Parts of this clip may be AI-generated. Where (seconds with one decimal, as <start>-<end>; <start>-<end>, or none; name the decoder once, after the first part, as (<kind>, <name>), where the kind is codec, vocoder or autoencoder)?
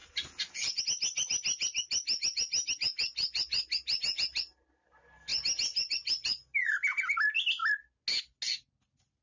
none